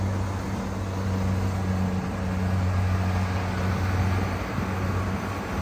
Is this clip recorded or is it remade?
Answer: recorded